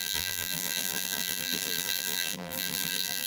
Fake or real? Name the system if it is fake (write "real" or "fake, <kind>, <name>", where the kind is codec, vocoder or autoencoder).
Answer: fake, vocoder, BigVGAN v2